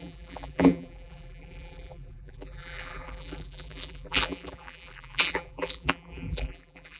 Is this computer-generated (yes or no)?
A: yes